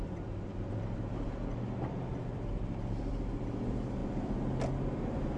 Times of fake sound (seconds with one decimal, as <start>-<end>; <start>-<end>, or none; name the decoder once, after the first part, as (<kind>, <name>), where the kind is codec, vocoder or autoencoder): 0.0-1.5 (vocoder, BigVGAN v2); 2.1-4.0